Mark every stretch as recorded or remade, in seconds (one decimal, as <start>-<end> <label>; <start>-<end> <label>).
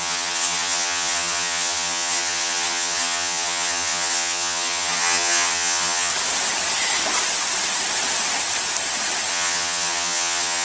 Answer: 0.0-6.1 remade; 6.1-9.3 recorded; 9.3-10.6 remade